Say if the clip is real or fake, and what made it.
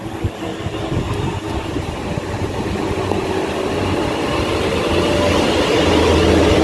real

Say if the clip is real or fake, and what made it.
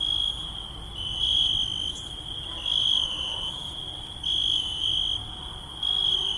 real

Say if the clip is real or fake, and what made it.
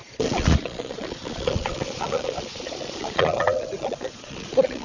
fake, vocoder, Vocos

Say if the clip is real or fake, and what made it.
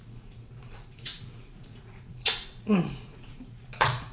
fake, vocoder, Vocos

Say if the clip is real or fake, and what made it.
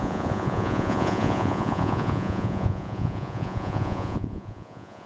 fake, vocoder, Vocos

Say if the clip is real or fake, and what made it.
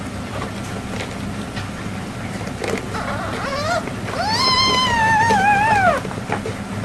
real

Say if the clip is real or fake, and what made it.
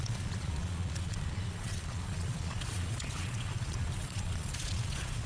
fake, vocoder, Vocos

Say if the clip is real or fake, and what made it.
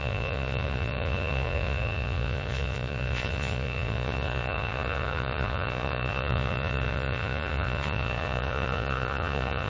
fake, vocoder, Vocos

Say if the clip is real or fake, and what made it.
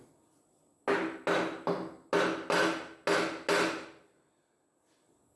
real